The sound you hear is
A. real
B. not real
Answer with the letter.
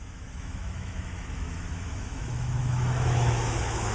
B